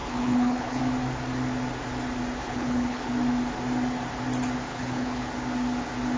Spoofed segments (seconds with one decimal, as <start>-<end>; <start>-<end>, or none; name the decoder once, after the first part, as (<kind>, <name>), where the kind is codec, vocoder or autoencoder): 0.0-0.8 (codec, HILCodec); 2.4-3.1; 4.7-5.3